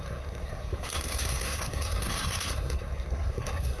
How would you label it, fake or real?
fake